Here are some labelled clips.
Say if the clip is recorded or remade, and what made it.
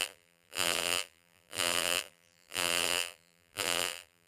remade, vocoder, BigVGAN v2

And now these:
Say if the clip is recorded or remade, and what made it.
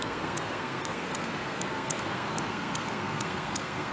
remade, codec, SNAC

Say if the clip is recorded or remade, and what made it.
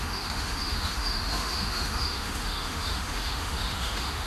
remade, autoencoder, DAC-VAE